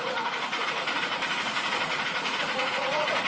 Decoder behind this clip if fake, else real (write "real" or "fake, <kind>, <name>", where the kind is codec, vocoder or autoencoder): fake, vocoder, Vocos